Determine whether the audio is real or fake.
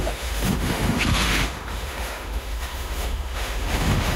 fake